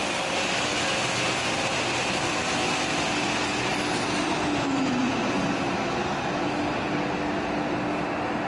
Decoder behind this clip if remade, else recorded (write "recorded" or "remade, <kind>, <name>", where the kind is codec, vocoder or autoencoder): recorded